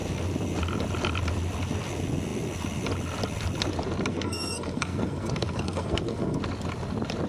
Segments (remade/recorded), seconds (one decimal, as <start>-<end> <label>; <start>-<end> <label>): 0.0-4.1 recorded; 4.1-6.4 remade; 6.4-7.3 recorded